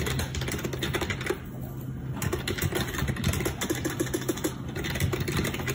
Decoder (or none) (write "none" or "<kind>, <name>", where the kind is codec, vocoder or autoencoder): none